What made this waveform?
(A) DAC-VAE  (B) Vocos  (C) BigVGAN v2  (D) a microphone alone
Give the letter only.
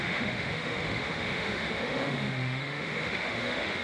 A